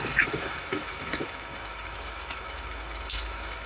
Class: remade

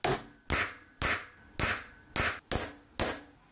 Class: recorded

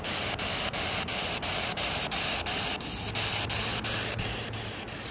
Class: recorded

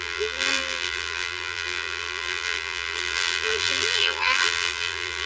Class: remade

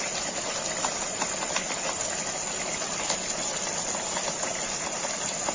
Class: recorded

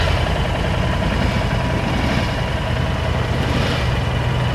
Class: recorded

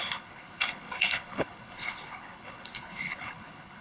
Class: remade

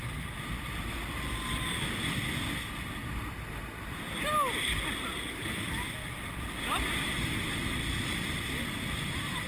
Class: recorded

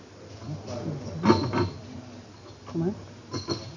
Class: recorded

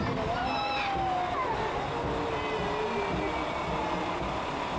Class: recorded